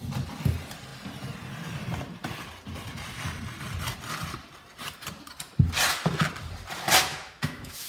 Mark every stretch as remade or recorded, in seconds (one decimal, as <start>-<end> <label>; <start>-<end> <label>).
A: 0.0-7.1 recorded; 7.1-7.9 remade